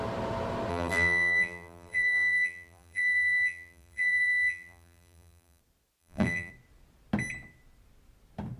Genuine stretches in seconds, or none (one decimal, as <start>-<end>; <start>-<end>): 0.0-0.7; 5.6-6.0; 6.5-8.6